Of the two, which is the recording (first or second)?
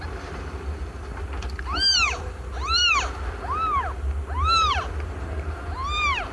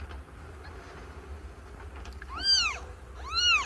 second